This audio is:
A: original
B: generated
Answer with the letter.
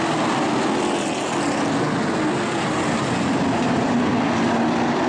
A